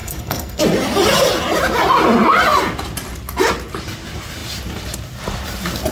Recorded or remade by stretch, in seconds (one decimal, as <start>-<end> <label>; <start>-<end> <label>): 0.0-0.6 remade; 0.6-5.9 recorded